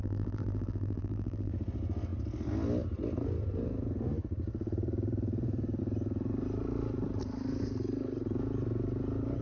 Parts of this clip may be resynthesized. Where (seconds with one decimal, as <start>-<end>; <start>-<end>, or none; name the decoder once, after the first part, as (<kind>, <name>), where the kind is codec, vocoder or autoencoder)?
0.0-1.5 (vocoder, BigVGAN v2)